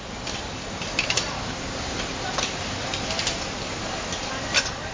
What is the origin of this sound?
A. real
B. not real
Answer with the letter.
A